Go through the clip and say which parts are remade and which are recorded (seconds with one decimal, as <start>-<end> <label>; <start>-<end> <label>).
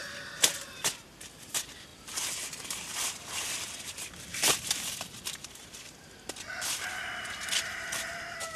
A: 0.0-1.5 recorded; 1.5-8.6 remade